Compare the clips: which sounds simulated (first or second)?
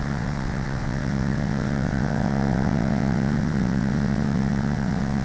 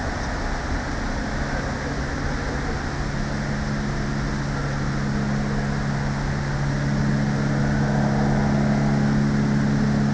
first